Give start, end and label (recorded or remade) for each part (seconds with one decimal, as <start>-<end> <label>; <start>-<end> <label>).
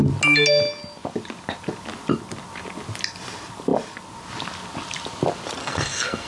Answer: 0.0-5.6 recorded; 5.6-6.3 remade